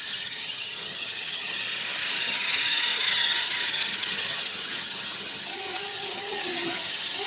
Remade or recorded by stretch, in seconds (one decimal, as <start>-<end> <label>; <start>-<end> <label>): 0.0-1.6 remade; 1.6-2.2 recorded; 2.2-7.3 remade